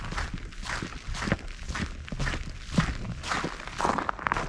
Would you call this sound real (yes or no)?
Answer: yes